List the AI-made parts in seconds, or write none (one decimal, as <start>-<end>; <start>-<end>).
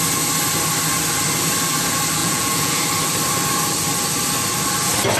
2.2-2.8